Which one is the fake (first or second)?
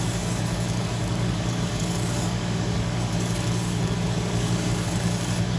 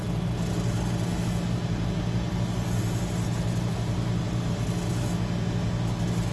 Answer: first